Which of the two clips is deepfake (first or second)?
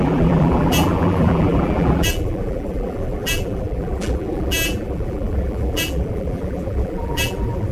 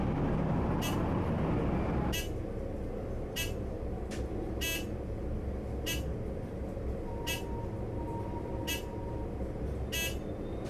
first